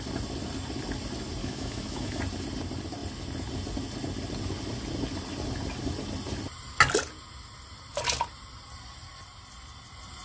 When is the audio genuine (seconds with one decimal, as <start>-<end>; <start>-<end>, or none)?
0.0-1.4; 2.2-10.2